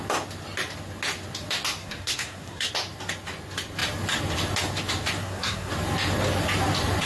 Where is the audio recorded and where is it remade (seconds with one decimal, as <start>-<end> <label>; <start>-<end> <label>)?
0.0-1.8 recorded; 1.8-2.7 remade; 2.7-5.2 recorded; 5.2-5.7 remade; 5.7-7.1 recorded